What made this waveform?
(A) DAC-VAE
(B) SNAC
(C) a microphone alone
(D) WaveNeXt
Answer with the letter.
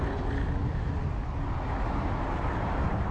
C